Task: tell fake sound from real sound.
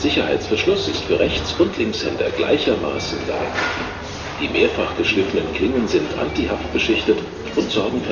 real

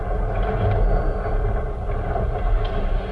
real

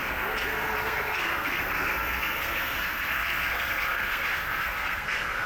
fake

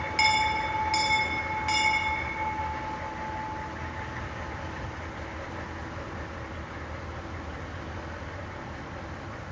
real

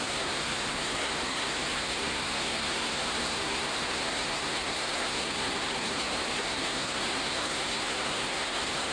fake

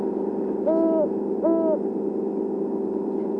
real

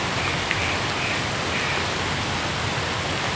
real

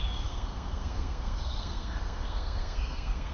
fake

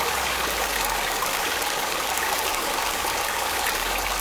fake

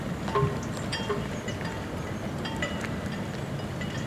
real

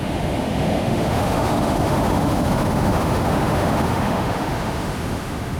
fake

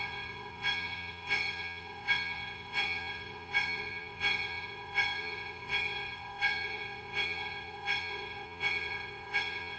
fake